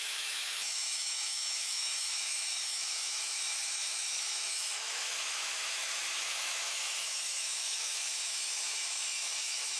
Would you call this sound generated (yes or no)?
yes